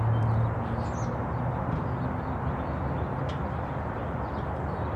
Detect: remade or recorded recorded